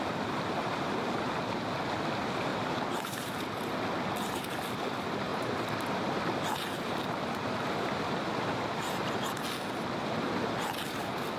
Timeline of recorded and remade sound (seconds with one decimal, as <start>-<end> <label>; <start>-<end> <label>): 0.0-2.5 recorded; 2.5-3.3 remade; 3.3-5.3 recorded; 5.3-6.2 remade; 6.2-11.4 recorded